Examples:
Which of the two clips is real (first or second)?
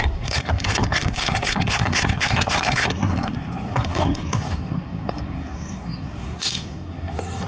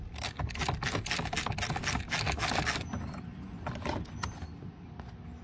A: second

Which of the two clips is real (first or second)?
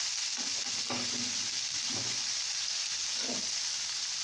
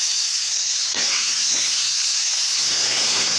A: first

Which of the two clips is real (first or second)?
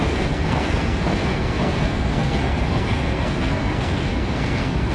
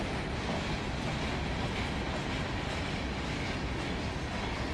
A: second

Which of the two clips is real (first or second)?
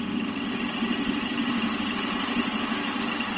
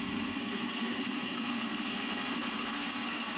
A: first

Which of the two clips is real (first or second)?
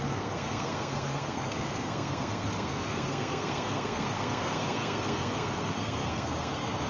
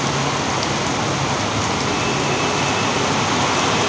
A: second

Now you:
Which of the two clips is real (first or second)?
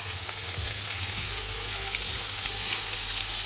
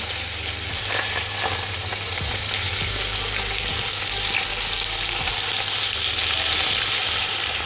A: second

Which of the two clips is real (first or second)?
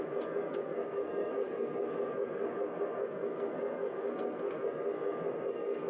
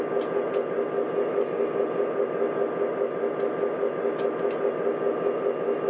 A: second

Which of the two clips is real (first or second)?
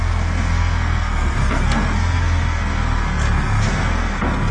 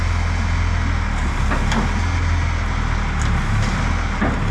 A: second